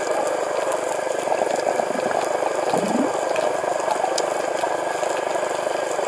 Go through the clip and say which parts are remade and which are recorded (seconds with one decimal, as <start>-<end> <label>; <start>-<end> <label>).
0.0-6.1 recorded